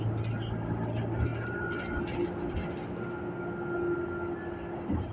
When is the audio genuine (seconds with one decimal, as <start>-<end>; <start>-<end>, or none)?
0.0-5.1